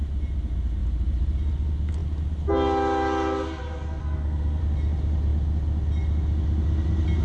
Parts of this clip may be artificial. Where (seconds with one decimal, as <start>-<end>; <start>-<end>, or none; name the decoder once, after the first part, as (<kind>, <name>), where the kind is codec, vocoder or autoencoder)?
4.0-4.6 (codec, SNAC)